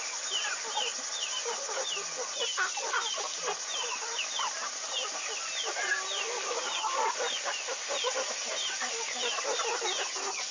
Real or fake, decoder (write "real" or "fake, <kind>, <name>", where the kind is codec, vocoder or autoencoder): real